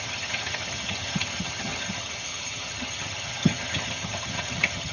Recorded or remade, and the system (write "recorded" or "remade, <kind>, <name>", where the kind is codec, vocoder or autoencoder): remade, vocoder, HiFi-GAN